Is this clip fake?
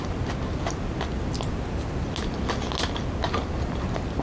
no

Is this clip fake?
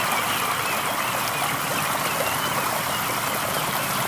no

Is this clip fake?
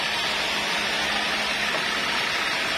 no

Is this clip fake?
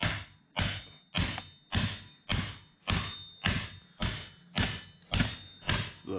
no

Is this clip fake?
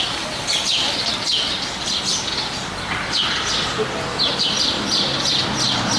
no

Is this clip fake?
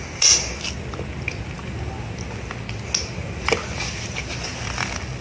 no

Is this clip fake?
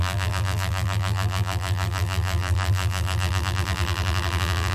yes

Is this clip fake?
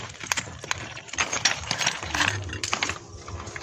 yes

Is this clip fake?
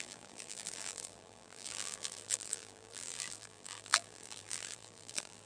yes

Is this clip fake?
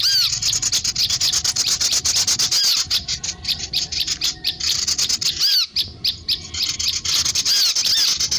no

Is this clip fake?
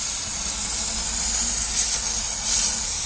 no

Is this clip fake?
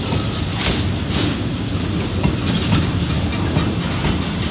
no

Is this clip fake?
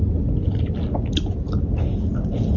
no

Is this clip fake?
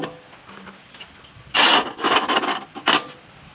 no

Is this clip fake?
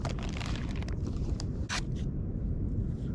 no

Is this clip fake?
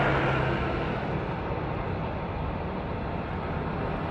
no